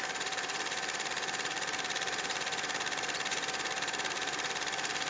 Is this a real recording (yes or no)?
no